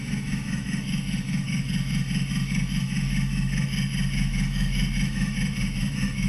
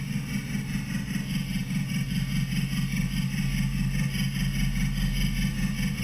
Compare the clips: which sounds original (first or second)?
second